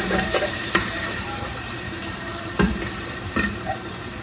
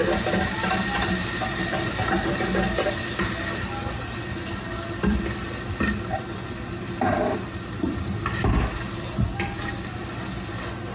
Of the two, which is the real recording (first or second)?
second